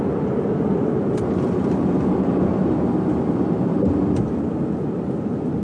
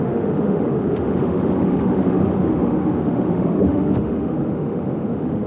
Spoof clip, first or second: second